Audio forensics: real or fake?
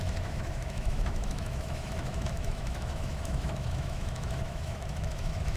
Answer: fake